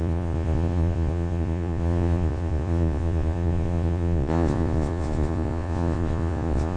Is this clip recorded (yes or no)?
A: no